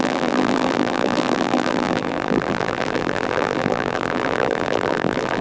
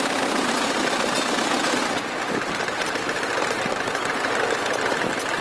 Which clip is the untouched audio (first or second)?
second